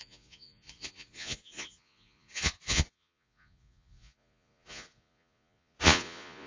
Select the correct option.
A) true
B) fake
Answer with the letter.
B